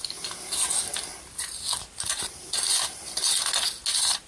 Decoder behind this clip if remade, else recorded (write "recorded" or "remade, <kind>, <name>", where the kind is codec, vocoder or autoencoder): recorded